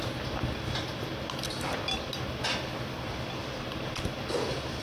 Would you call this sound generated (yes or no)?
no